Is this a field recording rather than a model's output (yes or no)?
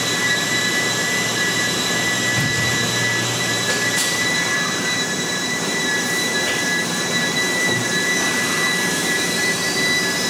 no